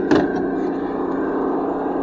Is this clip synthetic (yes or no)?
no